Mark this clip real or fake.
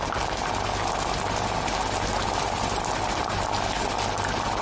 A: real